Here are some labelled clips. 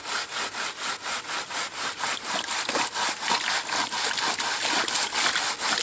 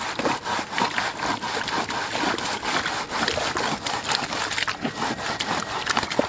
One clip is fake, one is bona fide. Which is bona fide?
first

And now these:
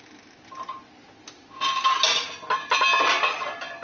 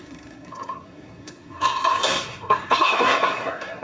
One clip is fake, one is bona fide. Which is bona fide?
first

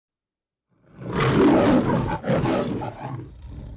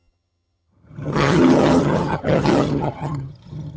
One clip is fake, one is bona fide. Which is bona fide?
first